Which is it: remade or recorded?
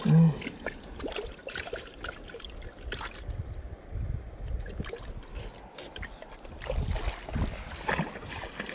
recorded